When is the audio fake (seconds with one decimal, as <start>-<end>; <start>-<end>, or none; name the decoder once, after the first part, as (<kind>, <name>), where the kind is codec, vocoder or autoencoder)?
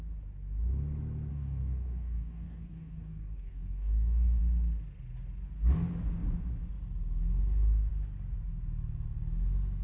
1.3-4.4 (codec, DAC)